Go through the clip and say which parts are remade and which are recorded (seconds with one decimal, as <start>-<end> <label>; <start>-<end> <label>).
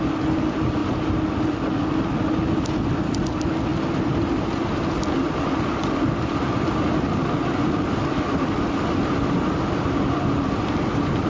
0.0-11.3 recorded